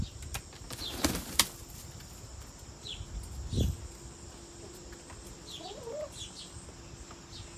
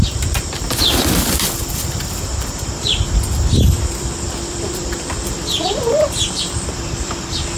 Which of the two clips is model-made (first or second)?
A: second